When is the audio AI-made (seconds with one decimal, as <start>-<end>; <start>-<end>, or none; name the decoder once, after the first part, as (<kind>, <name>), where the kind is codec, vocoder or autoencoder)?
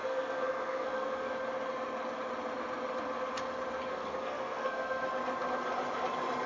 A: 0.0-1.3 (codec, SNAC); 3.9-5.1